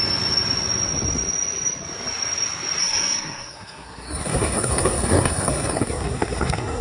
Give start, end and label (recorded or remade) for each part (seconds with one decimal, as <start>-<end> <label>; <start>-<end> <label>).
0.0-2.8 recorded; 2.8-6.8 remade